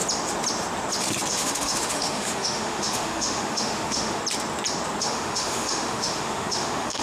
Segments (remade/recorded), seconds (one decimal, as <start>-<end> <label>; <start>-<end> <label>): 0.0-1.3 recorded; 1.3-4.2 remade; 4.2-5.0 recorded; 5.0-7.0 remade